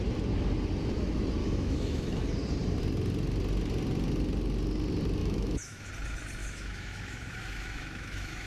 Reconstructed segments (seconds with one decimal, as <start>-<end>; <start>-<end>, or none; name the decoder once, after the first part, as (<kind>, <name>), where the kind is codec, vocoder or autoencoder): 1.4-2.2 (autoencoder, DAC-VAE); 5.2-5.9; 6.4-8.5